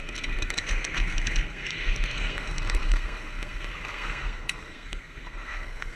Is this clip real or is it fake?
fake